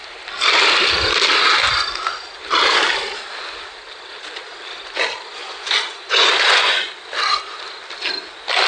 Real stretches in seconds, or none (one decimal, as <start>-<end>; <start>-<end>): 0.0-5.4; 6.9-8.7